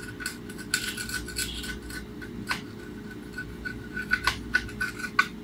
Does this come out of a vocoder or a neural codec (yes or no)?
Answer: no